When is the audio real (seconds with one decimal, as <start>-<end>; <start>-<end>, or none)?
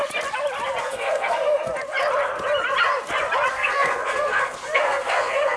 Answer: 0.0-0.8; 1.7-3.5